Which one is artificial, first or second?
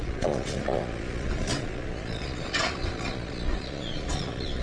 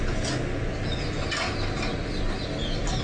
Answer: first